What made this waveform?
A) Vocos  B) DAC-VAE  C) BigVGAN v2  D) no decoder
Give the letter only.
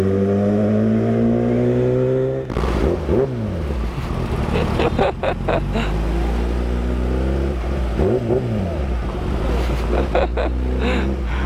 D